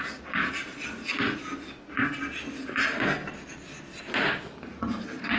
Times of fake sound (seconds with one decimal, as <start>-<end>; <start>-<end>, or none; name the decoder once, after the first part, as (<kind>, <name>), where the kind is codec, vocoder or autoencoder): none